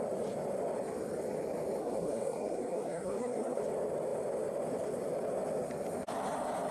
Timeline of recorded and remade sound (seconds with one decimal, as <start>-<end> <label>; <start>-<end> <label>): 0.0-1.8 recorded; 1.8-3.6 remade; 3.6-6.7 recorded